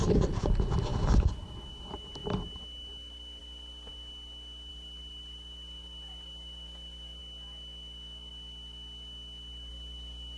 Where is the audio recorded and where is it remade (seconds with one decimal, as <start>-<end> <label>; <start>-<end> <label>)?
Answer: 0.0-0.9 remade; 0.9-1.7 recorded; 1.7-2.2 remade; 2.2-3.4 recorded; 3.4-3.9 remade; 3.9-4.7 recorded; 4.7-7.2 remade; 7.2-9.7 recorded; 9.7-10.4 remade